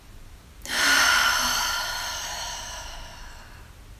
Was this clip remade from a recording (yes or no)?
no